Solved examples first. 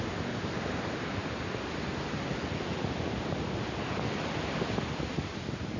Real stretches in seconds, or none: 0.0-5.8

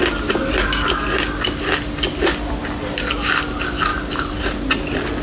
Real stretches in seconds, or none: 0.0-3.9; 4.7-5.2

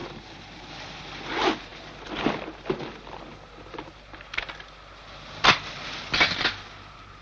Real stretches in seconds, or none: 1.0-1.7; 6.0-7.2

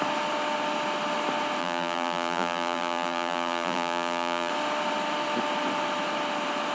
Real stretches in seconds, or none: 0.0-1.6; 4.5-6.7

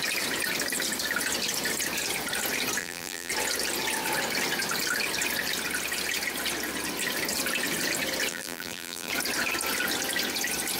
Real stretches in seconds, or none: 0.0-2.8; 3.3-8.3; 9.1-10.8

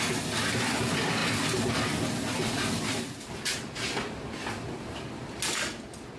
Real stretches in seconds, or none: 0.0-6.2

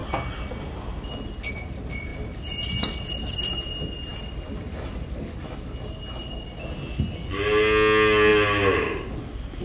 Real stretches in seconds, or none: 0.0-9.6

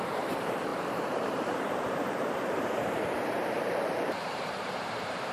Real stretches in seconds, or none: none